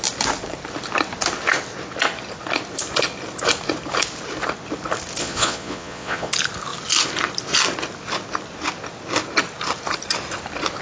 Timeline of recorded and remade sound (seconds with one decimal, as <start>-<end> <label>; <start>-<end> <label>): 0.0-5.2 recorded; 5.2-6.3 remade; 6.3-10.8 recorded